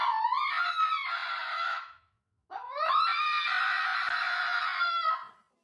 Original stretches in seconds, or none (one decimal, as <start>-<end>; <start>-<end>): 0.0-1.5; 2.9-5.6

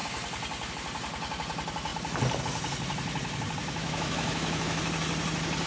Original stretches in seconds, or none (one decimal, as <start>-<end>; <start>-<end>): 0.0-3.6; 4.8-5.7

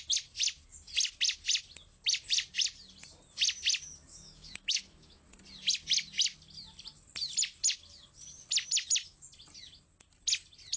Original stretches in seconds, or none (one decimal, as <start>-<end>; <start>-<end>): 0.0-4.1; 5.2-10.8

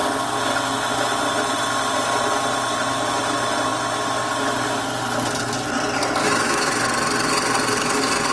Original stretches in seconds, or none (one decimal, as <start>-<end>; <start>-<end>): 0.0-6.2; 6.7-8.3

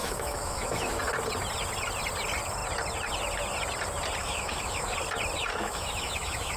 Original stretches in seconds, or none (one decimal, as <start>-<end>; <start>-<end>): 1.0-4.2; 4.9-5.5

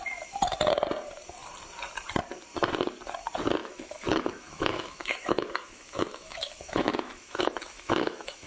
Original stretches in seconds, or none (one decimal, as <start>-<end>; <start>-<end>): 0.0-3.6

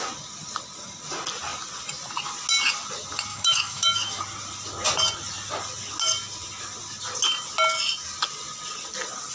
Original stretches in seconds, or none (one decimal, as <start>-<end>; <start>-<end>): 0.0-3.3; 4.2-9.3

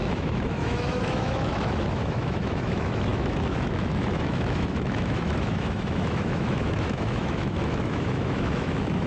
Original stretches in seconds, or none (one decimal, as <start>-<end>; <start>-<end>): none